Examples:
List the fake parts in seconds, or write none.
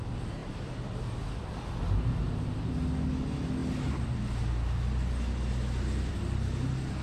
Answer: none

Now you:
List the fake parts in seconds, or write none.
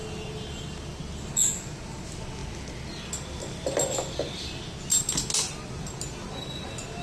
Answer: none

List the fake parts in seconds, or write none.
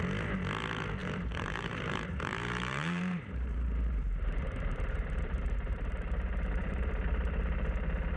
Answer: 1.0-5.9 (vocoder, BigVGAN v2); 6.6-7.4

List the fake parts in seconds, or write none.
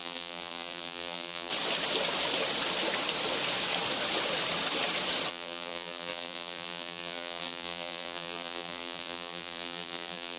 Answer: 0.0-1.5 (vocoder, BigVGAN v2); 5.3-10.4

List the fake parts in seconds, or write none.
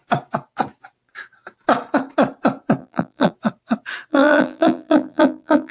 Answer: 2.8-3.3 (vocoder, BigVGAN v2); 4.1-5.7